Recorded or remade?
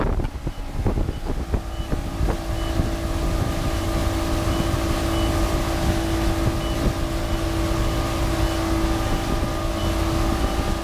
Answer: recorded